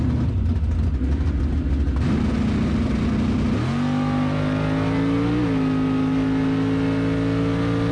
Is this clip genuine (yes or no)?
yes